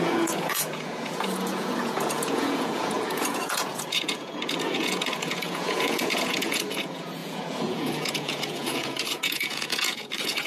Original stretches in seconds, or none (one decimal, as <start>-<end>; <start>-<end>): none